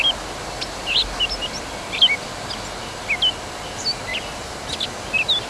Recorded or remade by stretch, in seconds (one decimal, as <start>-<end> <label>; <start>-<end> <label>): 0.0-5.5 recorded